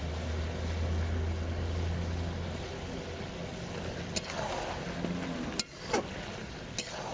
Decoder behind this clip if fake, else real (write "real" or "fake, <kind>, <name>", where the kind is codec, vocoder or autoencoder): real